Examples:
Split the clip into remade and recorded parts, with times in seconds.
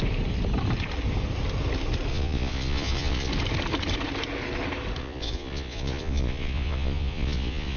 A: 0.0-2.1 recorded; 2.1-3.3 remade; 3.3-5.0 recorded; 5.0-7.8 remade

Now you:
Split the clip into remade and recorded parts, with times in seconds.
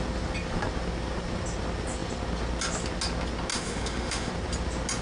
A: 0.0-3.5 recorded; 3.5-4.3 remade; 4.3-5.0 recorded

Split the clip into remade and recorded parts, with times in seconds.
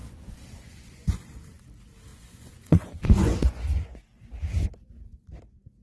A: 0.0-1.3 remade; 1.3-2.1 recorded; 2.1-4.2 remade; 4.2-5.8 recorded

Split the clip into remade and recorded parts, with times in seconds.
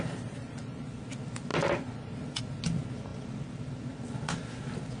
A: 0.0-1.5 recorded; 1.5-2.4 remade; 2.4-3.1 recorded; 3.1-3.6 remade; 3.6-5.0 recorded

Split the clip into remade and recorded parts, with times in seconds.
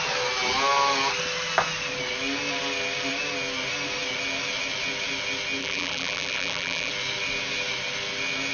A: 0.0-5.6 recorded; 5.6-6.9 remade; 6.9-8.5 recorded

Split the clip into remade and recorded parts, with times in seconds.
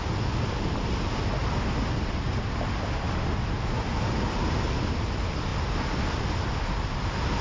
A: 0.0-7.4 recorded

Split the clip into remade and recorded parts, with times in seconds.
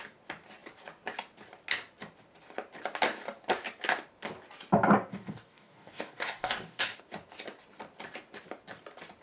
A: 0.0-5.1 recorded; 5.1-7.0 remade; 7.0-9.2 recorded